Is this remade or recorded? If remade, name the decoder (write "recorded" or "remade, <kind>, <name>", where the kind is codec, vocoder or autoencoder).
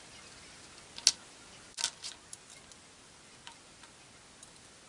recorded